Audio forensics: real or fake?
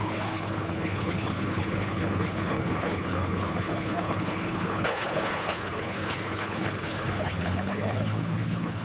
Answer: fake